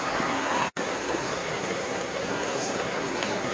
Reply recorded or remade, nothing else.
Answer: remade